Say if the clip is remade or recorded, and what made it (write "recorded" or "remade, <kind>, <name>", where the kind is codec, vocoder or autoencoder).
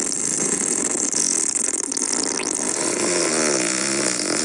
recorded